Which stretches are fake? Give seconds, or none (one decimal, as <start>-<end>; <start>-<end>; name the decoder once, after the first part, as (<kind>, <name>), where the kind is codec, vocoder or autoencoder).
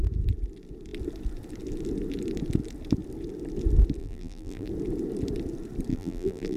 4.0-4.7 (vocoder, BigVGAN v2); 5.9-6.6